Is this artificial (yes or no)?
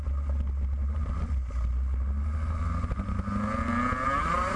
no